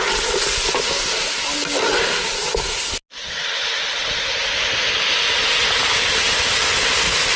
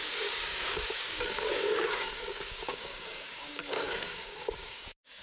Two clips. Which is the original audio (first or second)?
first